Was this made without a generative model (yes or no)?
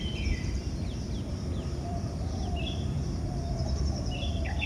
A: no